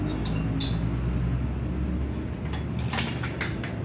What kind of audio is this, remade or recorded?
recorded